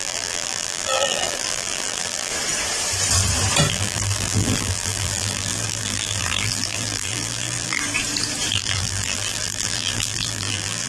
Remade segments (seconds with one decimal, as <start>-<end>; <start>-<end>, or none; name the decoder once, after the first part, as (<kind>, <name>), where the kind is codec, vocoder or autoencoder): 0.0-2.3 (vocoder, BigVGAN v2); 3.7-7.8; 8.5-10.9